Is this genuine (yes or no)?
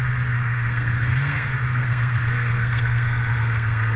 no